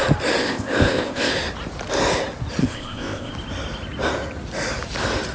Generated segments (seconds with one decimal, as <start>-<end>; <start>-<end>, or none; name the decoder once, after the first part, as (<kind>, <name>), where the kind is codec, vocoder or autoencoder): 0.4-1.3 (codec, ZipCodec); 2.6-3.3